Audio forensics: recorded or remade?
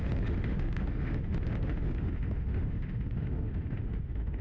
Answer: remade